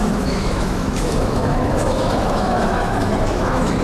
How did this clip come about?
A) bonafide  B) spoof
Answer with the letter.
B